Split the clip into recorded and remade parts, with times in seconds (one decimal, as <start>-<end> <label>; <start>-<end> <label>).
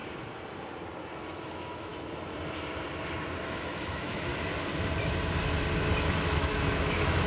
0.0-1.5 recorded; 1.5-1.9 remade; 1.9-3.4 recorded; 3.4-4.3 remade; 4.3-6.0 recorded; 6.0-7.3 remade